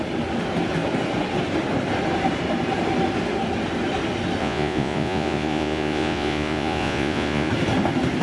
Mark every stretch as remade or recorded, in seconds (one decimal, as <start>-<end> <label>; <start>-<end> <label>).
0.0-4.4 recorded; 4.4-7.5 remade; 7.5-8.2 recorded